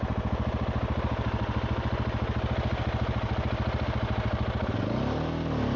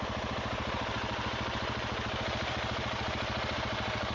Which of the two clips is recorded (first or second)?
first